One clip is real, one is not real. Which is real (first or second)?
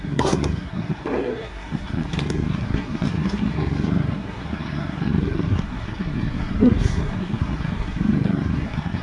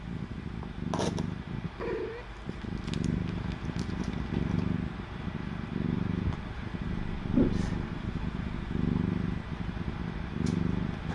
second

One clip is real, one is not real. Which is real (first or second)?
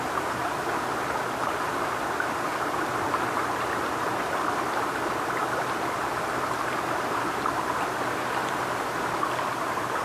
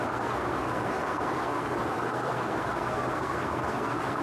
first